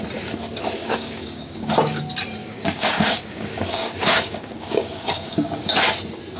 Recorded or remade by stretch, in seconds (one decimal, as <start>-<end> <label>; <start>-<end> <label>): 0.0-0.8 recorded; 0.8-2.0 remade; 2.0-2.4 recorded; 2.4-5.7 remade; 5.7-6.4 recorded